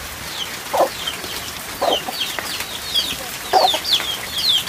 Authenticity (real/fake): real